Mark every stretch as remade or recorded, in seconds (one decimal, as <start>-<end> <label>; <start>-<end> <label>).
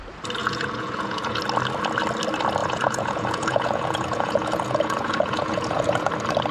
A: 0.0-0.4 recorded; 0.4-1.4 remade; 1.4-2.6 recorded; 2.6-6.1 remade; 6.1-6.5 recorded